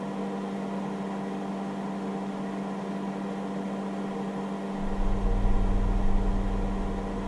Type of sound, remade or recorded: recorded